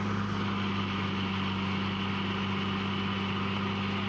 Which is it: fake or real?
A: real